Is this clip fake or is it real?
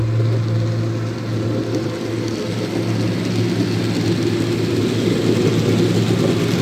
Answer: real